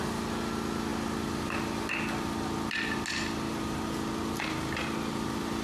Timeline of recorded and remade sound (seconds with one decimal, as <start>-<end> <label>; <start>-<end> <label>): 0.0-5.6 recorded